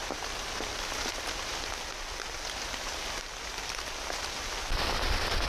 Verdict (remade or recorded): remade